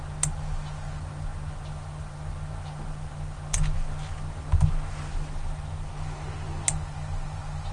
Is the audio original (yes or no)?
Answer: yes